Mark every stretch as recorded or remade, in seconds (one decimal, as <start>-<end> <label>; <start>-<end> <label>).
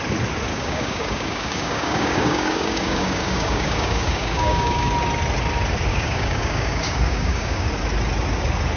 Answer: 0.0-0.5 recorded; 0.5-4.9 remade; 4.9-5.9 recorded; 5.9-7.7 remade; 7.7-8.8 recorded